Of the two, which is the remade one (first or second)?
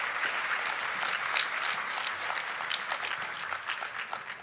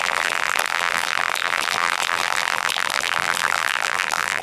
second